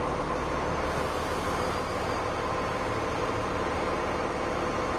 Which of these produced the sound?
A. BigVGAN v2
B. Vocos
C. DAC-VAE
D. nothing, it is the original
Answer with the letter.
D